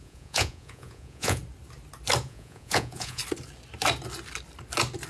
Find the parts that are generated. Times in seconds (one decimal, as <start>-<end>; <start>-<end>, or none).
0.0-1.4; 2.2-3.2